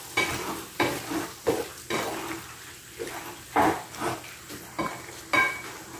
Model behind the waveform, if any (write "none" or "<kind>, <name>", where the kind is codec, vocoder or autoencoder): none